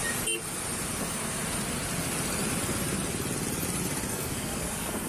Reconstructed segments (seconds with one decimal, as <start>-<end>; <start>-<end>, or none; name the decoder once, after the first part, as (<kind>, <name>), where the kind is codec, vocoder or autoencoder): 4.1-5.1 (codec, SNAC)